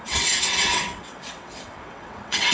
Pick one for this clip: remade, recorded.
remade